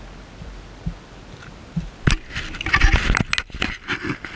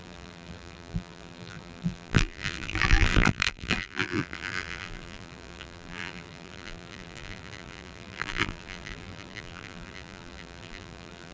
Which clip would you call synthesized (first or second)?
second